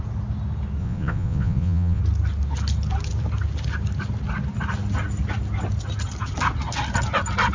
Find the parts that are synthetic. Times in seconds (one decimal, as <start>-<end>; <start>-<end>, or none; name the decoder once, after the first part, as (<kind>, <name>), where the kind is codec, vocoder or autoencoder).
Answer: 0.8-2.0 (vocoder, Vocos)